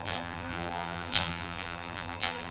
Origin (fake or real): fake